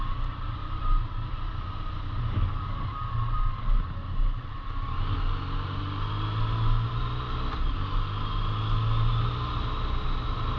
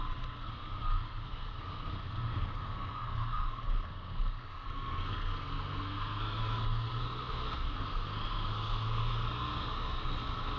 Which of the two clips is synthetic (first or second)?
second